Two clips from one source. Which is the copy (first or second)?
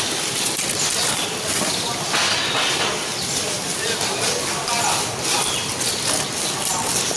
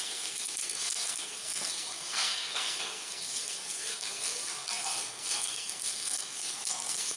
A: second